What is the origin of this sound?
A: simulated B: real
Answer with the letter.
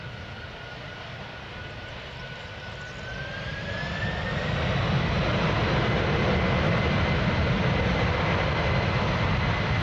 B